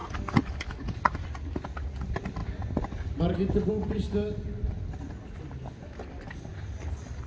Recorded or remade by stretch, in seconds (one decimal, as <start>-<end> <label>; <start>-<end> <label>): 0.0-7.3 recorded